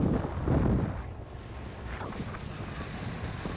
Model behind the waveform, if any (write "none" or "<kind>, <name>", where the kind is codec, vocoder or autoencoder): none